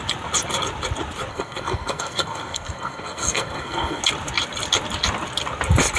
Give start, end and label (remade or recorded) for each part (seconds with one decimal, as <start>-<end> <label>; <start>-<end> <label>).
0.0-1.3 recorded; 1.3-4.0 remade; 4.0-6.0 recorded